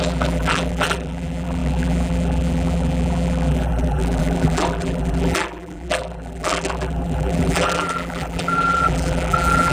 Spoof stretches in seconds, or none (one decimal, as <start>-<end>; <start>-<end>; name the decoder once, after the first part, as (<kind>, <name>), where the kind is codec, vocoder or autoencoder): 0.0-9.7 (vocoder, BigVGAN v2)